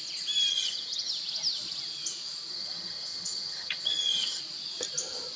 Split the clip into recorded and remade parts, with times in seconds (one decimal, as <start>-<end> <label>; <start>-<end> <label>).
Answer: 0.0-0.5 recorded; 0.5-1.1 remade; 1.1-2.5 recorded; 2.5-4.4 remade; 4.4-5.4 recorded